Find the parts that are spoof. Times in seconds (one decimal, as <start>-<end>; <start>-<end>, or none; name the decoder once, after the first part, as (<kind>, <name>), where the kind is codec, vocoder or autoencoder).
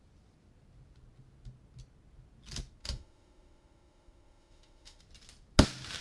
2.8-5.0 (autoencoder, DAC-VAE)